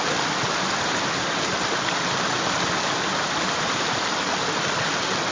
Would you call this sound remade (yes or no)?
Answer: no